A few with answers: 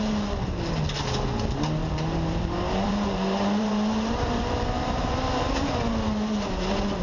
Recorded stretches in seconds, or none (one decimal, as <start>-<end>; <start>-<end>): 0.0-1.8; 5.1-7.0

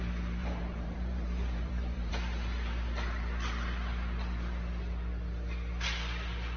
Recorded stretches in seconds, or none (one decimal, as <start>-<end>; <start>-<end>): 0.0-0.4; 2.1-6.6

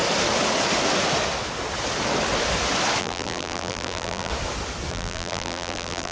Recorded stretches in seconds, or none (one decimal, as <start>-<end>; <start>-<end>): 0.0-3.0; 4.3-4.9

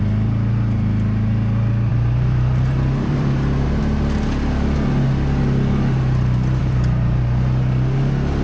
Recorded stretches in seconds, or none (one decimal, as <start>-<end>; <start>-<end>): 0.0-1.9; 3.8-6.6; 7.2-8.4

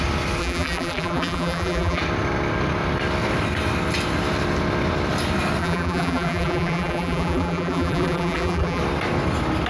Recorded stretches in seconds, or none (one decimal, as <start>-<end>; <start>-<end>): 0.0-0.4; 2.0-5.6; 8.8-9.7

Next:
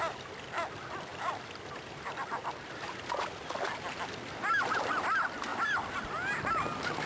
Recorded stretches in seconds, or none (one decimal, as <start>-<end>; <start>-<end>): 0.0-1.1; 3.6-5.5; 6.3-7.1

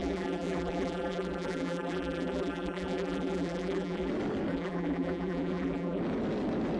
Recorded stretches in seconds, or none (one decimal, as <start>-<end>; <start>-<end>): 4.1-4.5; 6.0-6.8

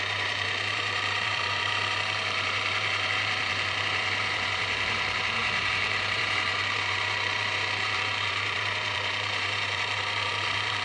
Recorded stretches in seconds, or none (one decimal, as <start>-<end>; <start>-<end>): none